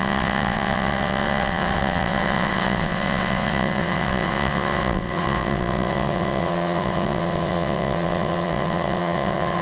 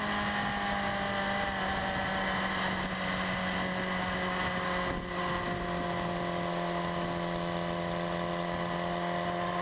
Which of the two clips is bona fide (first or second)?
second